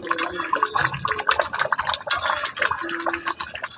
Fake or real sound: real